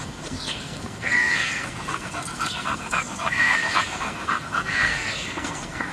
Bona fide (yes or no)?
no